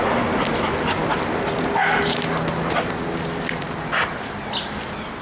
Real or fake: real